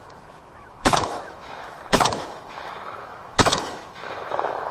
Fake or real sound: fake